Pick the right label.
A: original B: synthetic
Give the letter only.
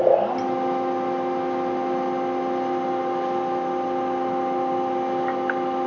A